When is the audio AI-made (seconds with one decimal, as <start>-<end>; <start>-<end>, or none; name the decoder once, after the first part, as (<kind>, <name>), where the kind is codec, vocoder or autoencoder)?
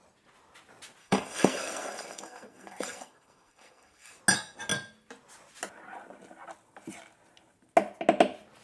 1.0-4.2 (codec, SNAC)